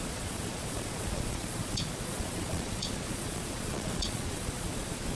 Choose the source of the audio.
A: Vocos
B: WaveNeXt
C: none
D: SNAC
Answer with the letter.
A